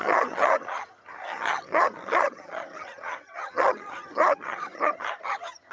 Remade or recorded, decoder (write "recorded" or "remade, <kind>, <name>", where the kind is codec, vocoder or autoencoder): remade, vocoder, HiFi-GAN